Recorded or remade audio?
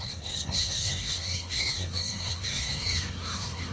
remade